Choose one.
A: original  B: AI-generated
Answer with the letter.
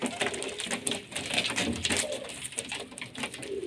A